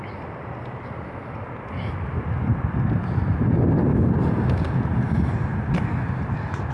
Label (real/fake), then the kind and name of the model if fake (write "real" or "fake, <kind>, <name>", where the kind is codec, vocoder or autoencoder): real